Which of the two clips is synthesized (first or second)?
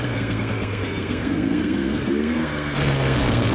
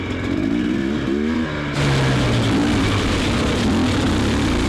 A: first